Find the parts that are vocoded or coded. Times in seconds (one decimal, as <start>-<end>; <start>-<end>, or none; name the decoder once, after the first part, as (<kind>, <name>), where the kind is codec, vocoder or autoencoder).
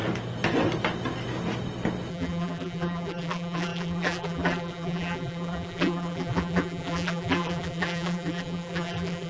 2.1-9.3 (vocoder, BigVGAN v2)